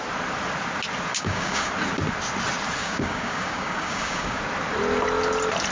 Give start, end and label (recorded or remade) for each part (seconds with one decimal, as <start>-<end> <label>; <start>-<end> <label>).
0.0-1.1 recorded; 1.1-1.7 remade; 1.7-2.8 recorded; 2.8-4.4 remade; 4.4-5.7 recorded